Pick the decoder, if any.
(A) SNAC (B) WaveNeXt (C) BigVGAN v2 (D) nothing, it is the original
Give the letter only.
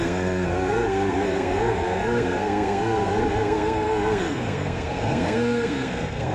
A